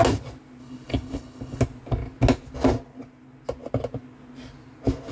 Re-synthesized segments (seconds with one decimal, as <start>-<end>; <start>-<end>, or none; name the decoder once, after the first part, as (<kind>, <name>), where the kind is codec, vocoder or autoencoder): 0.6-1.6 (codec, HILCodec)